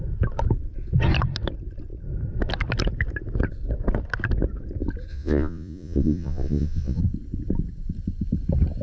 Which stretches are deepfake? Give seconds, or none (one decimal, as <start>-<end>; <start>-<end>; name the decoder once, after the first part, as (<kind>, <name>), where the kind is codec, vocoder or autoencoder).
5.1-7.0 (vocoder, Vocos)